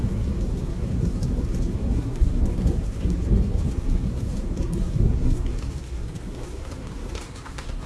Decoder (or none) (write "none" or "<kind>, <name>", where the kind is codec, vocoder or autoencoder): codec, SNAC